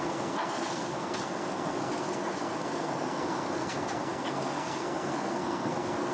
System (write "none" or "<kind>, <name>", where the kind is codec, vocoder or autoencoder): codec, SNAC